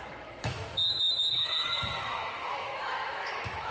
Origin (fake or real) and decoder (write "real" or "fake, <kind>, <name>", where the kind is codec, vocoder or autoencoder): fake, autoencoder, DAC-VAE